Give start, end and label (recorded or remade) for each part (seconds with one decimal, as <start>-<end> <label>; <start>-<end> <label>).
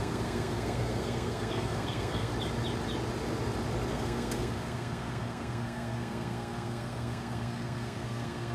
0.0-2.3 remade; 2.3-3.9 recorded; 3.9-8.5 remade